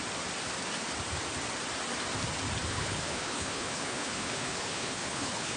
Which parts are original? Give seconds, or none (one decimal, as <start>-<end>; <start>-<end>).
0.0-2.7